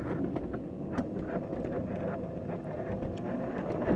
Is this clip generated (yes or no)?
no